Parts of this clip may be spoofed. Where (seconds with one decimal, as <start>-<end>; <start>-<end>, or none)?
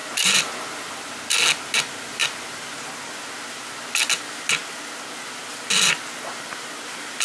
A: 0.0-1.1; 2.2-2.9